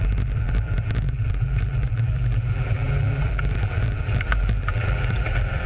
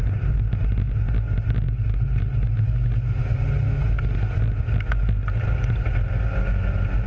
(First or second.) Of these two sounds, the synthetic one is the first